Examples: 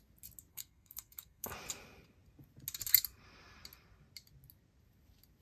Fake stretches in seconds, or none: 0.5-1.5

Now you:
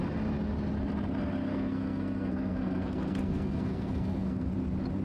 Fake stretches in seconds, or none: 1.5-4.5

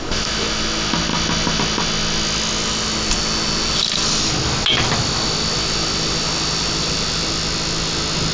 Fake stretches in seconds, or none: none

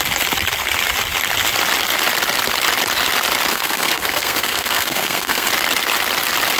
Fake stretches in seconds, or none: 3.5-5.5

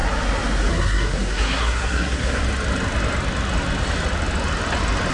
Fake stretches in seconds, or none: 0.7-2.4

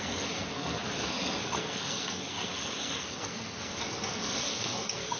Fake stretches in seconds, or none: 0.0-5.2

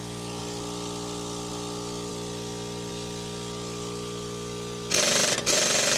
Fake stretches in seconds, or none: none

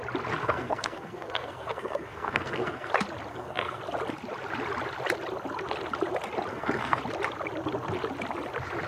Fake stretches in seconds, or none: 0.4-2.9; 3.3-3.8; 6.5-7.0